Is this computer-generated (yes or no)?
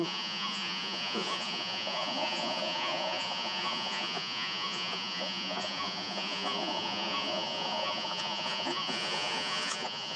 yes